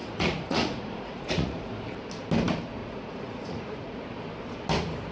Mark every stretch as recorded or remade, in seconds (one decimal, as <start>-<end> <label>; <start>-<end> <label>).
0.0-1.7 remade; 1.7-2.8 recorded; 2.8-4.0 remade; 4.0-5.1 recorded